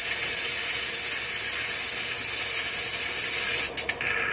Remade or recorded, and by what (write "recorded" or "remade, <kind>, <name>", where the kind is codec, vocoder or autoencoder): recorded